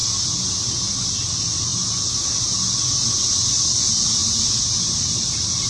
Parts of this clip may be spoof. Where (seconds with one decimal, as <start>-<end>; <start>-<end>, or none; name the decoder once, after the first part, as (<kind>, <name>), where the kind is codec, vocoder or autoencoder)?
0.0-0.5 (vocoder, BigVGAN v2); 1.7-2.4; 4.2-5.7